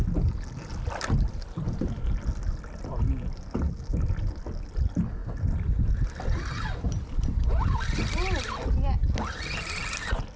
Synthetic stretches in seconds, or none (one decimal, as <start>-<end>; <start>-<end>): none